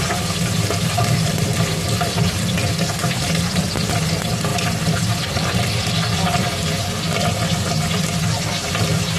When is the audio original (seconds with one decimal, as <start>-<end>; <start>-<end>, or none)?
0.0-3.0; 3.6-9.2